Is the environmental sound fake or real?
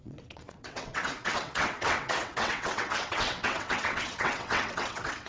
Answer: fake